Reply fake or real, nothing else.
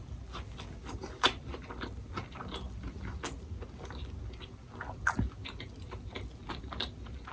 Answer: real